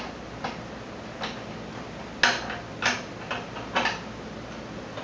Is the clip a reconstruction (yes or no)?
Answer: no